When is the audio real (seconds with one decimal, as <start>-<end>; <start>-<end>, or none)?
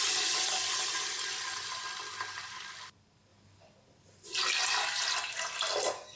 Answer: 0.0-6.2